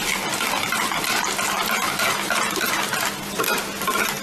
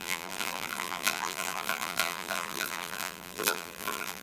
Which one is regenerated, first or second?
second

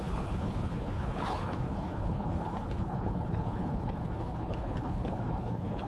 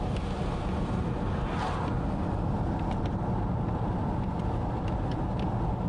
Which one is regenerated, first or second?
first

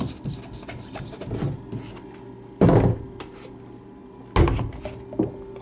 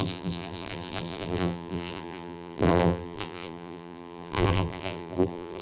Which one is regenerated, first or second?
second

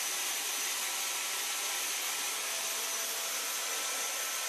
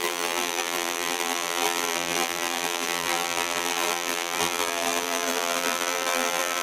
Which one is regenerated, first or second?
second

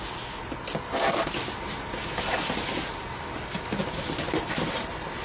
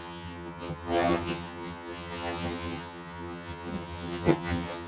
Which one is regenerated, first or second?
second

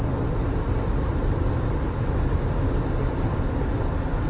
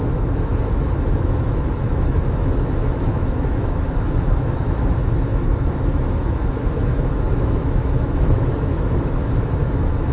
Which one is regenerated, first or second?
second